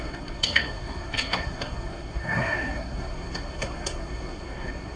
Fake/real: fake